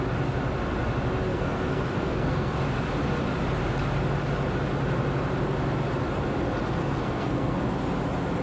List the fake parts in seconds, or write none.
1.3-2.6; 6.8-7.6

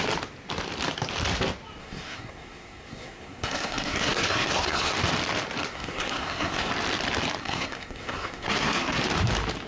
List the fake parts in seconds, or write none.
1.8-4.9; 5.7-6.7; 7.4-9.0

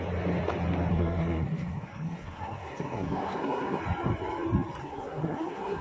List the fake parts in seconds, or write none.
0.9-3.8; 4.8-5.8

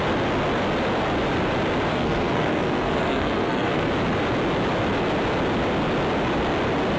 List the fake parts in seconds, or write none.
1.9-3.9

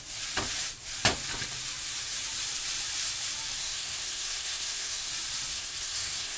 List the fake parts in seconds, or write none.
3.6-5.1; 5.5-6.4